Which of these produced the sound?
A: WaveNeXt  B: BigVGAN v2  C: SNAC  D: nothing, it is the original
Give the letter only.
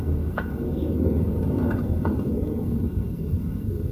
C